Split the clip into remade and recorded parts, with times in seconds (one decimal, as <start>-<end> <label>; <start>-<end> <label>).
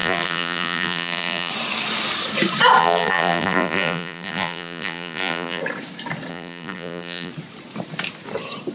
0.0-1.5 remade; 1.5-2.8 recorded; 2.8-5.6 remade; 5.6-6.3 recorded; 6.3-7.3 remade; 7.3-8.7 recorded